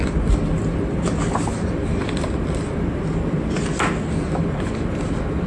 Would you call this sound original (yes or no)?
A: yes